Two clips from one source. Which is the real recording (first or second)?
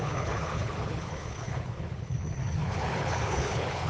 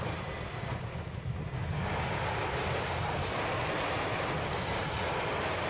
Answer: second